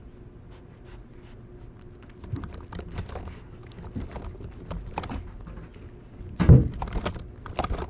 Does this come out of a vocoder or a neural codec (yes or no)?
no